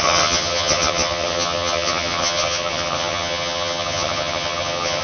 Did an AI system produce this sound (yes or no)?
yes